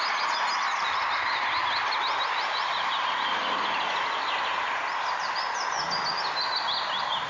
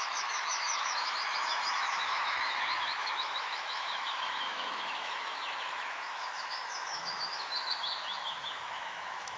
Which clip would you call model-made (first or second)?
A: second